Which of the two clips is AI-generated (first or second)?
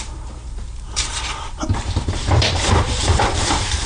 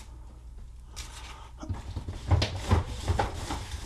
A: first